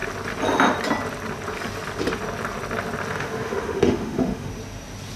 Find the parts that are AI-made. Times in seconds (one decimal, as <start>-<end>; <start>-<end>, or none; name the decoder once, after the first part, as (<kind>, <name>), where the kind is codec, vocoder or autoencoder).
3.1-4.5 (autoencoder, DAC-VAE)